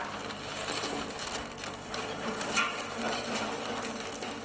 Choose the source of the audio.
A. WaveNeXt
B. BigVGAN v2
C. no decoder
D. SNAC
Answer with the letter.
C